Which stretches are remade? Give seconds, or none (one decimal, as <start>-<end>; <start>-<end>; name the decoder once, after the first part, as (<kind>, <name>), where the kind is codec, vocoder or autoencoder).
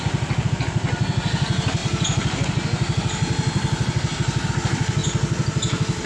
none